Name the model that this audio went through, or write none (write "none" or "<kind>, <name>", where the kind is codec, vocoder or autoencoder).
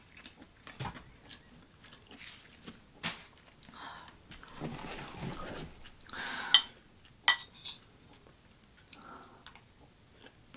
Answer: none